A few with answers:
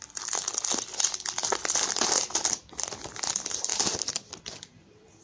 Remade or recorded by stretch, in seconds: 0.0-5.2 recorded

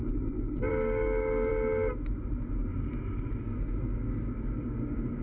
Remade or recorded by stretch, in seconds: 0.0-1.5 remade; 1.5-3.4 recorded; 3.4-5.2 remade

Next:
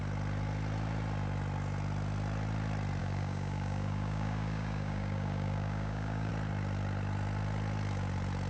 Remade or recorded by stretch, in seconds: 0.0-3.0 recorded; 3.0-6.3 remade; 6.3-8.5 recorded